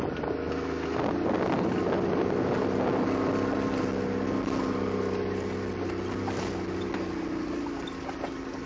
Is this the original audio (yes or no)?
yes